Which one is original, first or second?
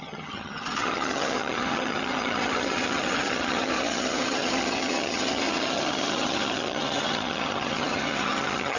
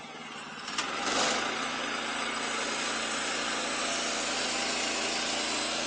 second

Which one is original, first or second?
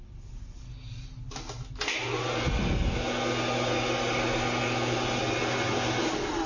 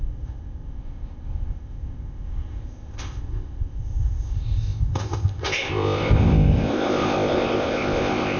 first